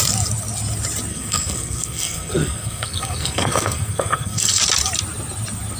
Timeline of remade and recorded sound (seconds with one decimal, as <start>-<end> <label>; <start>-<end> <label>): 0.0-1.1 recorded; 1.1-4.6 remade; 4.6-5.8 recorded

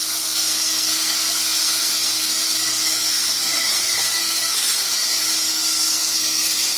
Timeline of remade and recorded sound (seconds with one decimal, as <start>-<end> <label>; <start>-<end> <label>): 0.0-4.9 remade; 4.9-5.5 recorded; 5.5-6.8 remade